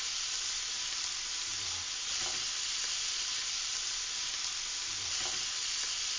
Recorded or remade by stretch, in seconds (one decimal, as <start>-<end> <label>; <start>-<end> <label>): 0.0-6.2 recorded